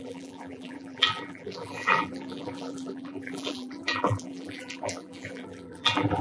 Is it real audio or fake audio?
fake